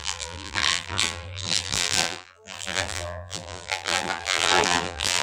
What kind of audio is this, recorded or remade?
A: remade